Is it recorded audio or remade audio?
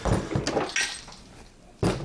recorded